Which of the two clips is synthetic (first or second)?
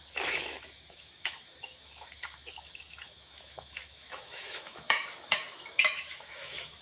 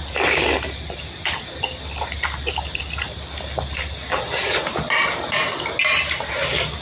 first